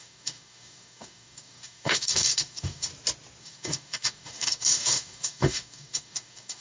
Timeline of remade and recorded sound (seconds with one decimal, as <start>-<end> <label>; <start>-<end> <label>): 0.0-2.9 remade; 2.9-3.4 recorded; 3.4-6.6 remade